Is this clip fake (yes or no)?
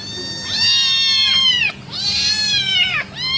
no